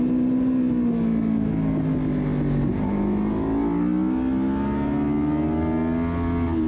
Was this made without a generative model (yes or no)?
yes